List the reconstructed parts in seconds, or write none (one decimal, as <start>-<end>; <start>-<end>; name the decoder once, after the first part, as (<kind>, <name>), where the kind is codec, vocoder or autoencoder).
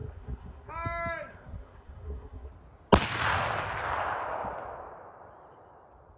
0.0-0.7 (codec, SNAC); 1.3-2.5